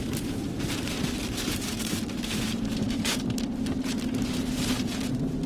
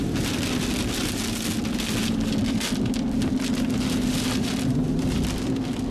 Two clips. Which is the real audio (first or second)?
second